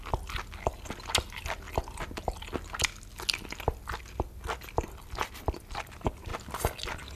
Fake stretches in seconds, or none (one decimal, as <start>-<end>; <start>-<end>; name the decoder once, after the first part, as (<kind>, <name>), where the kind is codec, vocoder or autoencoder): none